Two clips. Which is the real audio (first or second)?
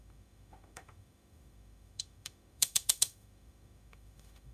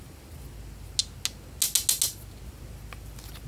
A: second